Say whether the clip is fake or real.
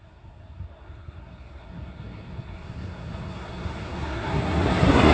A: fake